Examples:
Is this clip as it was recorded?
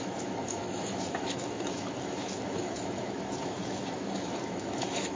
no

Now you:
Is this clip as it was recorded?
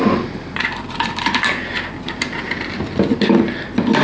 yes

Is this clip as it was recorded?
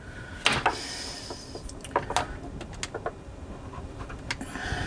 yes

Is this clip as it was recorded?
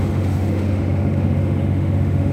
no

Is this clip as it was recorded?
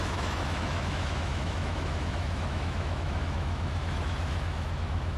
no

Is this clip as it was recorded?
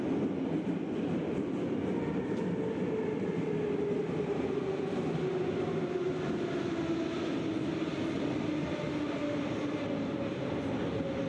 yes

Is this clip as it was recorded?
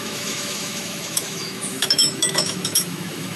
no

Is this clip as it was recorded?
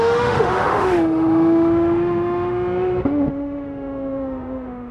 no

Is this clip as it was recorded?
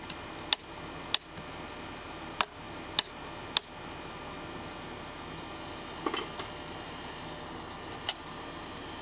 yes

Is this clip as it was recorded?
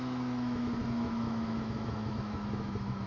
no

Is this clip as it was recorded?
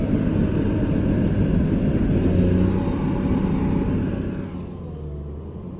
yes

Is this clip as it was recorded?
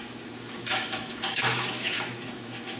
no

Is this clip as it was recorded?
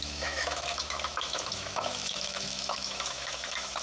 no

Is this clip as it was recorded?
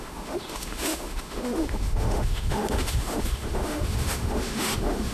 no